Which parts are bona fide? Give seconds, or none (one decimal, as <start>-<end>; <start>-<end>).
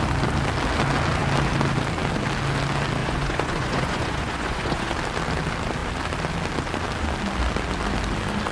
0.0-3.0; 4.9-8.5